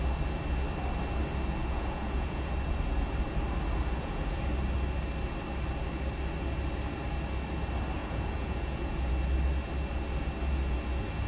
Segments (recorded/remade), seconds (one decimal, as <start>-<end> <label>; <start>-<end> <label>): 0.0-1.6 recorded; 1.6-2.5 remade; 2.5-3.8 recorded; 3.8-4.4 remade; 4.4-8.0 recorded; 8.0-9.1 remade; 9.1-11.3 recorded